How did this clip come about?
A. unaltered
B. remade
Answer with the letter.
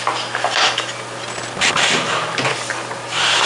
A